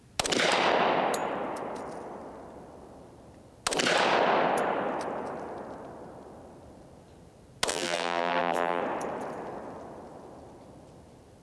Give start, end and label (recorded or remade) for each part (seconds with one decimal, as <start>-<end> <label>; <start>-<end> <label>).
0.0-7.7 recorded; 7.7-8.8 remade; 8.8-11.4 recorded